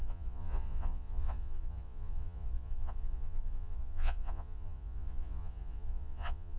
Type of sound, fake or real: fake